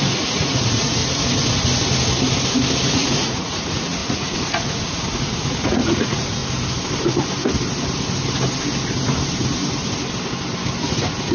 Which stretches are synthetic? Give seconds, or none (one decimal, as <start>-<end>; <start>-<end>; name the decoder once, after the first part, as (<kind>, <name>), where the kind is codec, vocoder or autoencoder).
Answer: 0.0-1.0 (vocoder, Vocos); 2.9-6.4; 10.8-11.3